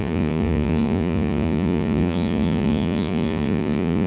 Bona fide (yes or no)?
no